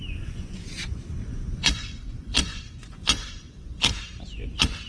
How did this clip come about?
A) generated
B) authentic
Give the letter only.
A